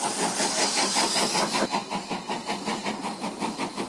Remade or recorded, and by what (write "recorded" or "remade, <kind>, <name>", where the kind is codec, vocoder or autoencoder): recorded